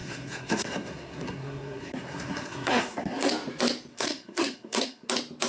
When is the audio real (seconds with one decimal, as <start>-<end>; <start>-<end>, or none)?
3.3-3.9; 5.1-5.5